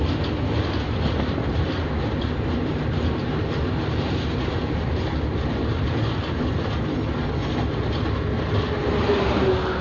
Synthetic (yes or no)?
no